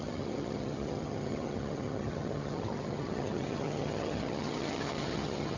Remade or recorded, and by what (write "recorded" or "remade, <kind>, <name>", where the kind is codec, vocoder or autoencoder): remade, vocoder, HiFi-GAN